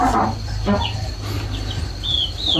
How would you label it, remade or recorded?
recorded